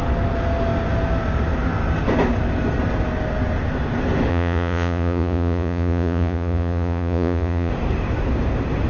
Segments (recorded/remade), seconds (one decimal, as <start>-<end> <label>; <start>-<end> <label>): 0.0-4.3 recorded; 4.3-7.7 remade; 7.7-8.9 recorded